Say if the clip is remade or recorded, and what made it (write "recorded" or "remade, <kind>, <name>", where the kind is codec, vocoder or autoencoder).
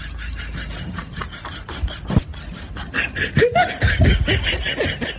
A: recorded